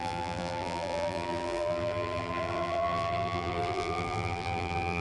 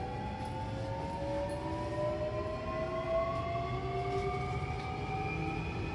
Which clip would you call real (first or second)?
second